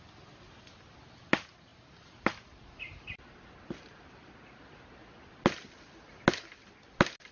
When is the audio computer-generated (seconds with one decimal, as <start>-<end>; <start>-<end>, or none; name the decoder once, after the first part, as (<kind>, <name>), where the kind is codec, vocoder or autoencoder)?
none

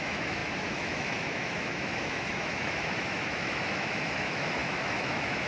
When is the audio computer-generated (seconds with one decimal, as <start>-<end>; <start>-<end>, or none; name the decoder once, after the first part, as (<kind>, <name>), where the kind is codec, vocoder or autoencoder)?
0.0-5.5 (autoencoder, DAC-VAE)